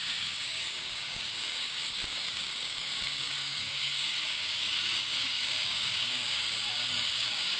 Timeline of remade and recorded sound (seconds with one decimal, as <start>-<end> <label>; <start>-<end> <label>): 0.0-7.6 remade